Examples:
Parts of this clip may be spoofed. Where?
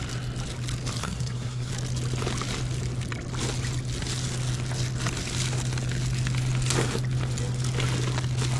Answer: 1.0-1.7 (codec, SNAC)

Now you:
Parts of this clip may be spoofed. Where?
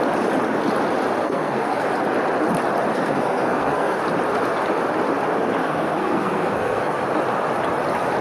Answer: 1.2-1.9 (codec, SNAC); 2.9-4.0; 5.6-7.0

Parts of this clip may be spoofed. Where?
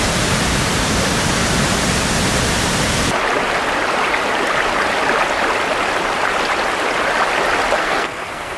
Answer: 7.8-8.6 (codec, SNAC)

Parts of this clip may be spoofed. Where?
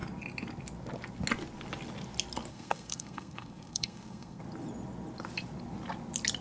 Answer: 2.5-4.4 (codec, SNAC)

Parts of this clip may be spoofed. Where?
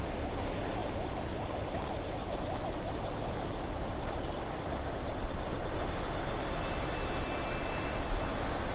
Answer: none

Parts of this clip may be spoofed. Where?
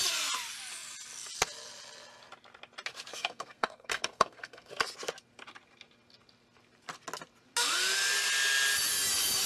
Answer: 3.1-4.7 (codec, SNAC)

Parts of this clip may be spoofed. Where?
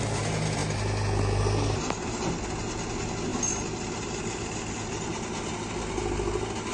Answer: none